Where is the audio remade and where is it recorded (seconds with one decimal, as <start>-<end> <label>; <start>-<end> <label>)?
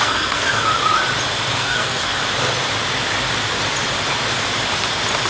0.0-0.7 remade; 0.7-1.5 recorded; 1.5-2.2 remade; 2.2-5.3 recorded